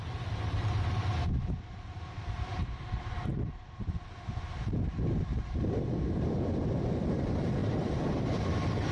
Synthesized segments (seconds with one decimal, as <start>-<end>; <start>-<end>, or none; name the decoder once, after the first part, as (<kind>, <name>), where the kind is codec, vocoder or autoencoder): 0.0-3.3 (vocoder, BigVGAN v2); 4.9-8.9